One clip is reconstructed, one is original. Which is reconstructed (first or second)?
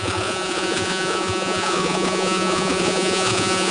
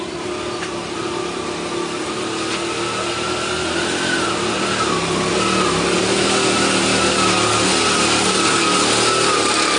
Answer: first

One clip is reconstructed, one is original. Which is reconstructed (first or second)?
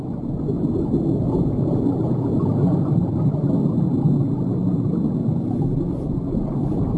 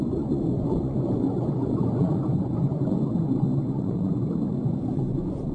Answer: second